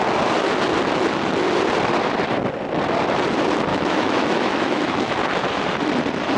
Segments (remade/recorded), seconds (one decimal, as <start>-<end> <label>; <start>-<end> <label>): 0.0-3.7 recorded; 3.7-5.2 remade; 5.2-6.4 recorded